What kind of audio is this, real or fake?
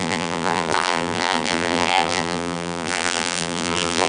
fake